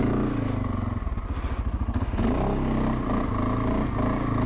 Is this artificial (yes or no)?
no